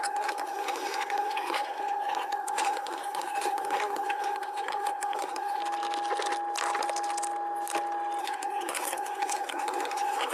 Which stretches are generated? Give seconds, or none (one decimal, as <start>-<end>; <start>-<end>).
0.0-5.6; 8.2-10.3